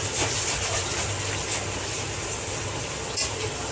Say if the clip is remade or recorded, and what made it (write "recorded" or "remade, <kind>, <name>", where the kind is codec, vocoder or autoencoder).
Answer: recorded